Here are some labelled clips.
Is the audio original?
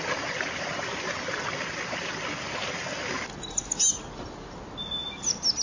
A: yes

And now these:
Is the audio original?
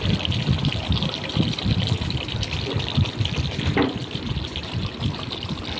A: no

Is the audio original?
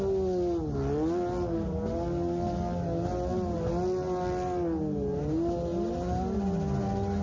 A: yes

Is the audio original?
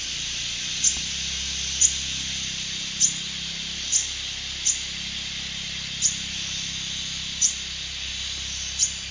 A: yes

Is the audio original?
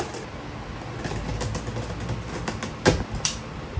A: yes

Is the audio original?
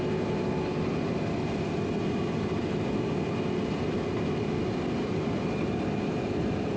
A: yes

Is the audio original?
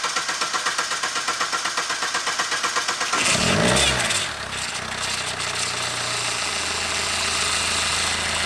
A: yes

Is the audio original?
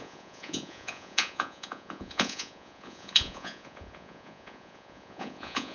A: no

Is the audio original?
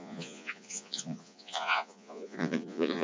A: no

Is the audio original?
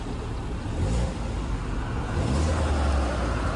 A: yes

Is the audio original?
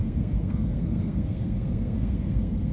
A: no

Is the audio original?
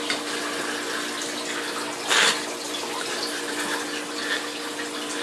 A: yes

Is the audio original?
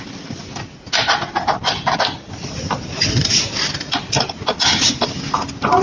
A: yes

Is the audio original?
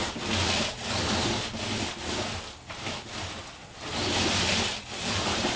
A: yes